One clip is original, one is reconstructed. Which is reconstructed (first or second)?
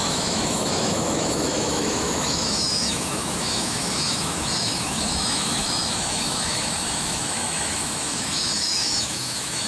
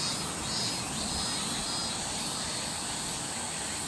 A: first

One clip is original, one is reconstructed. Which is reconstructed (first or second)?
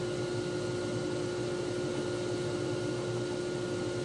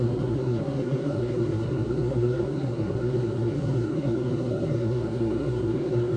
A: second